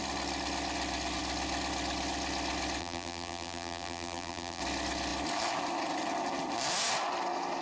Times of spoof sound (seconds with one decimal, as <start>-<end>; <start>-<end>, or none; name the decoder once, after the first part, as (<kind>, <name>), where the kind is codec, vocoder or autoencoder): 2.8-4.6 (vocoder, BigVGAN v2)